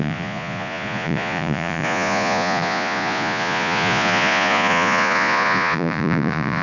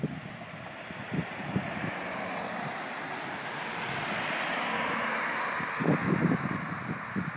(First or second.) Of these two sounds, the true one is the second